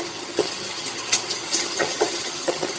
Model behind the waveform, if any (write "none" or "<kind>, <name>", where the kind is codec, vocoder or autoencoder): vocoder, HiFi-GAN